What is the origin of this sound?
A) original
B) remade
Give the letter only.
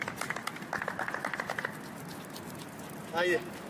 A